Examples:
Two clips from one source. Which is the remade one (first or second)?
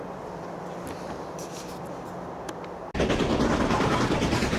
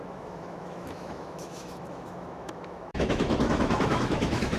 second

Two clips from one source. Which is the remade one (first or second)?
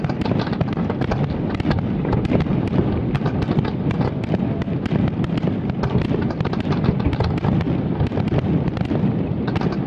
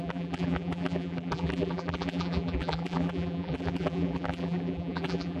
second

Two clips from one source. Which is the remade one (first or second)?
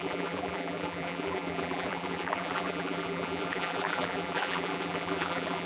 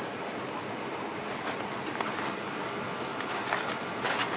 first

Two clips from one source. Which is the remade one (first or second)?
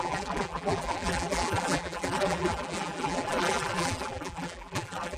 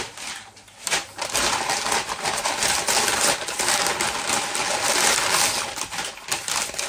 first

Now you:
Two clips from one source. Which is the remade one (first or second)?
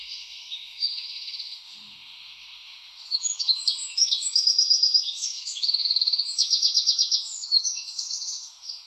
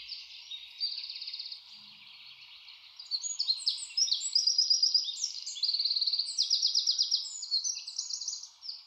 first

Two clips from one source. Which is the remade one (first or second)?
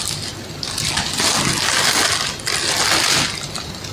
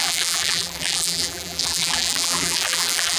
second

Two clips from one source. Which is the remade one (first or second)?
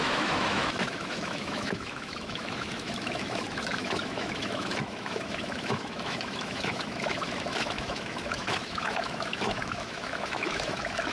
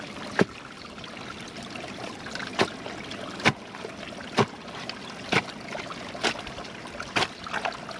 first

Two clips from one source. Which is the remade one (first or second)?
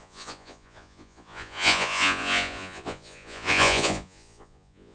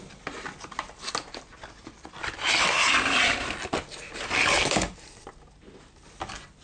first